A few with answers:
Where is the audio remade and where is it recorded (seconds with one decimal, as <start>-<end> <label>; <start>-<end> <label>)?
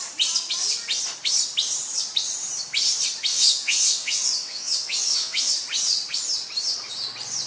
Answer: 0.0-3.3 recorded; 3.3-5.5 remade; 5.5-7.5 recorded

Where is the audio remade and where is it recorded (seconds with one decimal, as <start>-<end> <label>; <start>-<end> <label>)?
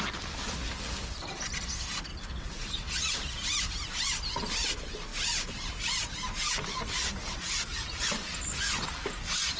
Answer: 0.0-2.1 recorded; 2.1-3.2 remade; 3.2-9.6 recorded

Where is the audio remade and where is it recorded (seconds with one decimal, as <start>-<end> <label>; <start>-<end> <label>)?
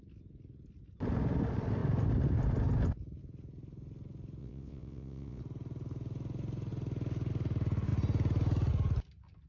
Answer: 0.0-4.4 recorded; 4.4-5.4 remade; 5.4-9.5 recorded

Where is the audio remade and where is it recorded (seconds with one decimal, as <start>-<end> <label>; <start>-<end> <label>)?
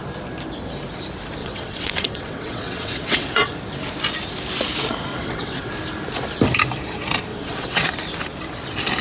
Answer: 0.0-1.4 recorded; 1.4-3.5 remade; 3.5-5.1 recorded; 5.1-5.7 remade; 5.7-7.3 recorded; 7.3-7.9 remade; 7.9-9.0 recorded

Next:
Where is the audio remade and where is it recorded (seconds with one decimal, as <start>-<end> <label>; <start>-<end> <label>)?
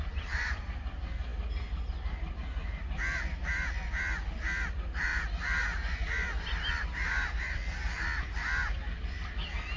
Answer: 0.0-9.8 recorded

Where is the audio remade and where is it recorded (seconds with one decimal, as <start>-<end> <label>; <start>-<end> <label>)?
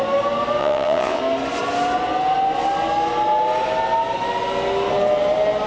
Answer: 0.0-0.6 recorded; 0.6-1.2 remade; 1.2-5.7 recorded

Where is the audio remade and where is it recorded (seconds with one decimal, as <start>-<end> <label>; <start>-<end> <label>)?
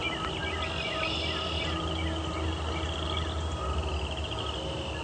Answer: 0.0-5.0 recorded